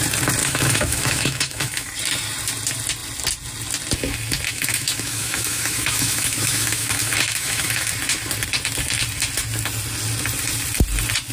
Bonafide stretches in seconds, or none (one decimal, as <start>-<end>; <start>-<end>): 0.0-0.4; 1.9-4.5; 7.9-11.3